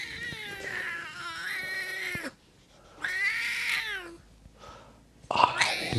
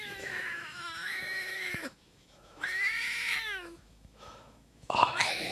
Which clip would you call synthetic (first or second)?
second